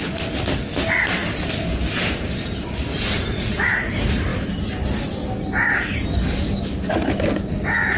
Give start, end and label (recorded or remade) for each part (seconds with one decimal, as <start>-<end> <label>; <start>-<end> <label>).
0.0-2.9 recorded; 2.9-3.9 remade; 3.9-8.0 recorded